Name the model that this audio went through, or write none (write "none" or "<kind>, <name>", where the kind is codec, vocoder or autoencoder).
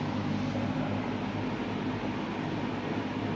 none